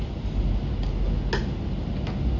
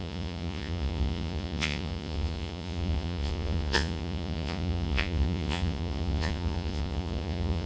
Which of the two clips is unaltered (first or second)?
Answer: first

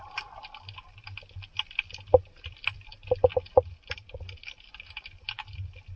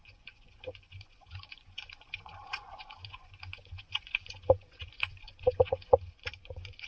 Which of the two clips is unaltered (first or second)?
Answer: first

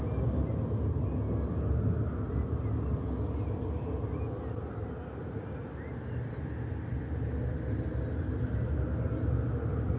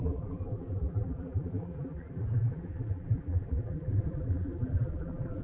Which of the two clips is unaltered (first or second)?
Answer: first